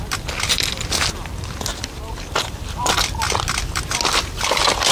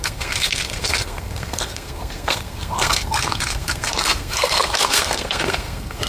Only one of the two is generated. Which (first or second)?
second